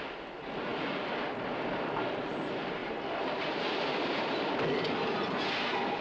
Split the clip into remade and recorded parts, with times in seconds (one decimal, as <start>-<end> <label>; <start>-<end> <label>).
0.0-6.0 recorded